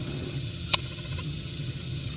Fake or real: fake